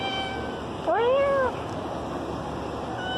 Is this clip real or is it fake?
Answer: real